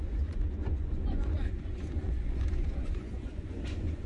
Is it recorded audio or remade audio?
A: remade